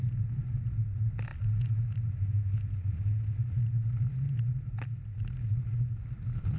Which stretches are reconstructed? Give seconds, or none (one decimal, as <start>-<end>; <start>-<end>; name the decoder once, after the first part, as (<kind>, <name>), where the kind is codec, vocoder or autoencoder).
none